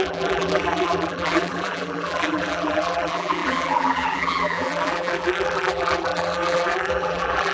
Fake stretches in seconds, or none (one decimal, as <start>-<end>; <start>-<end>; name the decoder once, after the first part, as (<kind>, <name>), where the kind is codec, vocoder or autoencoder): 0.0-7.5 (vocoder, BigVGAN v2)